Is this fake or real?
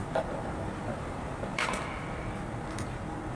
fake